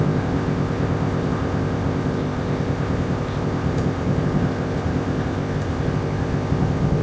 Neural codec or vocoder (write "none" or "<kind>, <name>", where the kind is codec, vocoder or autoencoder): codec, ZipCodec